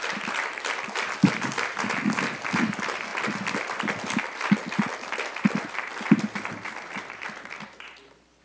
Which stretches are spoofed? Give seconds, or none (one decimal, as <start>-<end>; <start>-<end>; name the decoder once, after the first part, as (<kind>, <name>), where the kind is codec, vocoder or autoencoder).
none